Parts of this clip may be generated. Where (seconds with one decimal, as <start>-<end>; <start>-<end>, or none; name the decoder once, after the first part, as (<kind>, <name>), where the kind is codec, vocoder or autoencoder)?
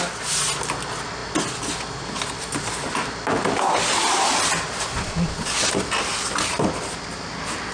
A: none